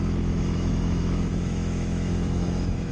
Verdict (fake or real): fake